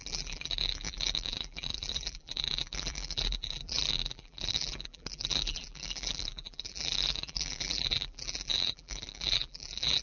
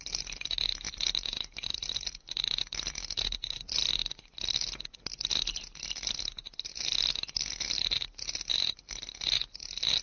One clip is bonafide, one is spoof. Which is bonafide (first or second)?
second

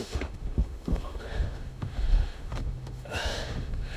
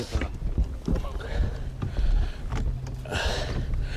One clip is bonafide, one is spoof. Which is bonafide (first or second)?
second